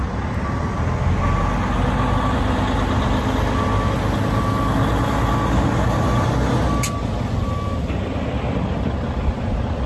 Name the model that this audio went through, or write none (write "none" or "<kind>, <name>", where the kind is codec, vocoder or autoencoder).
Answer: none